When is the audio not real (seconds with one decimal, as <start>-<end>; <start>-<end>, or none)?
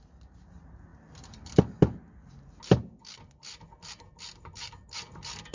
none